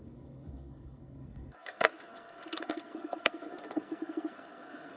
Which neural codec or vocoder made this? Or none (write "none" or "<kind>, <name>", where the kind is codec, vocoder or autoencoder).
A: codec, SNAC